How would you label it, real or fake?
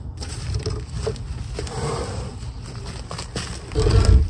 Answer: real